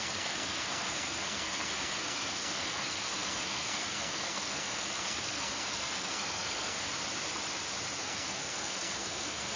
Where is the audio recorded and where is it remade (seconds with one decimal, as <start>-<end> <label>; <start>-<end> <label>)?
0.0-6.9 remade; 6.9-8.0 recorded; 8.0-9.6 remade